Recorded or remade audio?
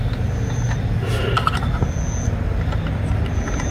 recorded